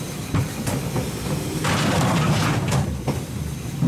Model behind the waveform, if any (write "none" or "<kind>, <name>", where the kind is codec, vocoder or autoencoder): none